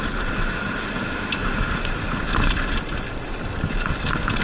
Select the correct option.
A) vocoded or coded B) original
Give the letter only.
B